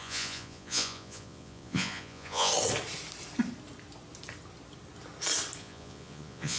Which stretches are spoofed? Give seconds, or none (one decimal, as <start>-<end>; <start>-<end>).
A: 0.0-2.5; 5.6-6.6

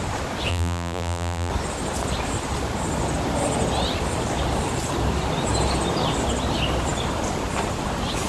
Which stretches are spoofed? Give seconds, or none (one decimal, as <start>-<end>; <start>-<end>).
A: 0.5-1.5

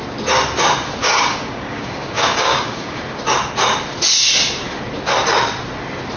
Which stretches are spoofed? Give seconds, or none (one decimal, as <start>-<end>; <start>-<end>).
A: 1.0-3.2

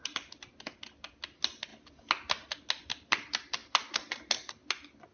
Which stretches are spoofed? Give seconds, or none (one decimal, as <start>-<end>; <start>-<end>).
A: none

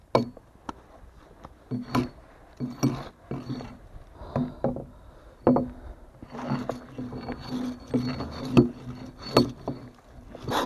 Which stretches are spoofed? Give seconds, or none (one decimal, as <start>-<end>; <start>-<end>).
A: none

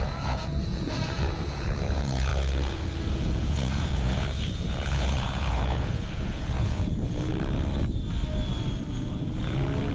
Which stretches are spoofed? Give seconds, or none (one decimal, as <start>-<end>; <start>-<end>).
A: 0.0-7.3; 8.9-9.9